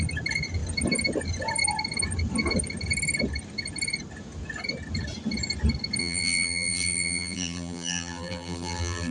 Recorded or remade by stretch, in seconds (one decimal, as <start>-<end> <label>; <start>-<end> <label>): 0.0-6.0 recorded; 6.0-9.1 remade